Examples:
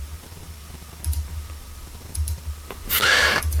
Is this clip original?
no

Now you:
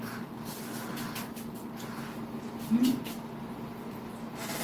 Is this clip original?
yes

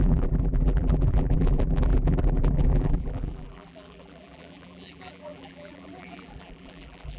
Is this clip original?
no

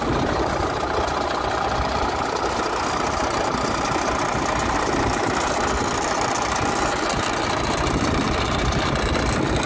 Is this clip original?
yes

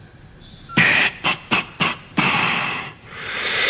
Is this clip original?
no